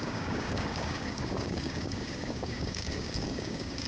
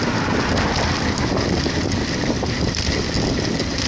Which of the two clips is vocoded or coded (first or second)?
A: first